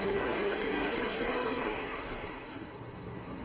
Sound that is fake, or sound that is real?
fake